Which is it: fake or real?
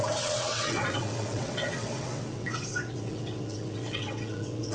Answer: fake